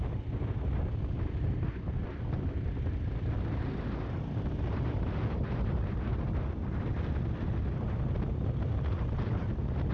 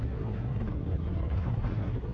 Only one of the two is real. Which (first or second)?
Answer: first